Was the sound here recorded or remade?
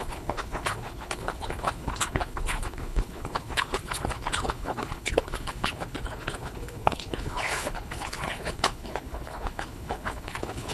remade